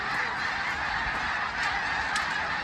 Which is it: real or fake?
real